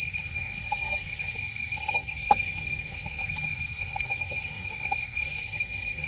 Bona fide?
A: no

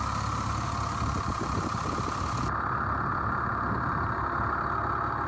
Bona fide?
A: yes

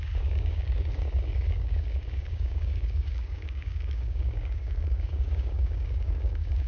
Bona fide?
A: no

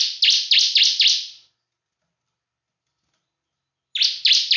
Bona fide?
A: yes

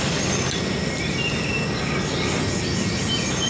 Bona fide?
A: yes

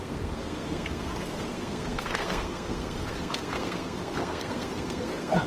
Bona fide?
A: no